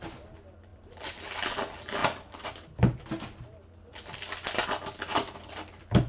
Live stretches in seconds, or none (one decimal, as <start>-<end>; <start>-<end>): 0.0-0.7; 1.2-6.1

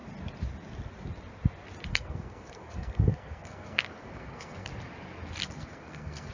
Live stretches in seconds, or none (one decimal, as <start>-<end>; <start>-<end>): 0.0-1.9; 4.7-5.4

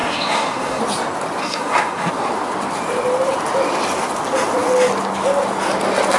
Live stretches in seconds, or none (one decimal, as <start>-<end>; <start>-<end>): 0.8-1.4; 2.1-6.2

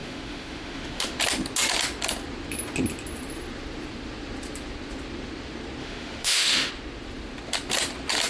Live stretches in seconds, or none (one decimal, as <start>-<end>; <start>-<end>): 1.2-5.8; 6.7-8.3

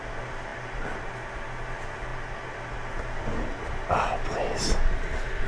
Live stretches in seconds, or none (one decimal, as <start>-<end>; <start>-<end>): 0.0-5.5

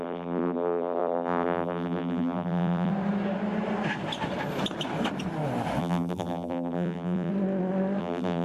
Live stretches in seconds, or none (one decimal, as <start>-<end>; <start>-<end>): 2.9-5.8; 7.3-8.0